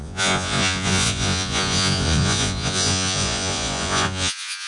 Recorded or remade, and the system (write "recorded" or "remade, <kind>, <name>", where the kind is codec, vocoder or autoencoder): remade, vocoder, Vocos